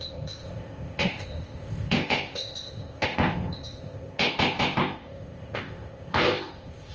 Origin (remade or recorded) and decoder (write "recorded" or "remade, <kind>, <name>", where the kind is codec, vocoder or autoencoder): remade, codec, ZipCodec